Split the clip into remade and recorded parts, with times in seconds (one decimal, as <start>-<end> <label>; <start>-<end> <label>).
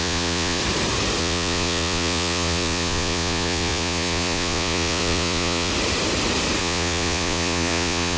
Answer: 0.0-0.6 remade; 0.6-1.2 recorded; 1.2-5.7 remade; 5.7-6.6 recorded; 6.6-8.2 remade